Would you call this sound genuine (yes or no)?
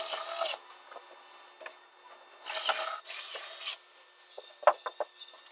yes